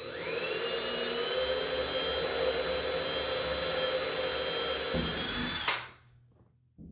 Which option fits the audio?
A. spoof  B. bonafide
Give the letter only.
B